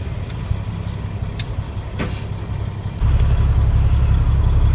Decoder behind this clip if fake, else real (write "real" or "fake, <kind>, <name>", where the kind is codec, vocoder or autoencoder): real